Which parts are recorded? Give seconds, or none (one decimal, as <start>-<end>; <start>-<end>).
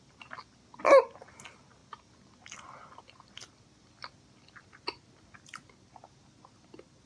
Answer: 0.0-7.1